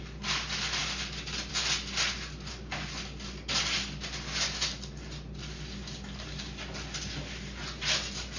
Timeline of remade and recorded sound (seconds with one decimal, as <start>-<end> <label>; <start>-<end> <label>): 0.0-8.4 recorded